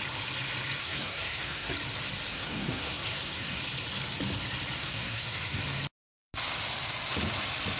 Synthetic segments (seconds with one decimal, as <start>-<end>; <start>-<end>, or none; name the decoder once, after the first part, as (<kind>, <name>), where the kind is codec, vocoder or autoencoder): 0.8-1.7 (codec, SNAC); 2.3-3.6; 4.8-5.6